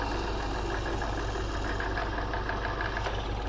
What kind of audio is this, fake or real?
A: real